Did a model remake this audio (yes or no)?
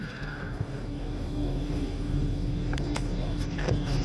yes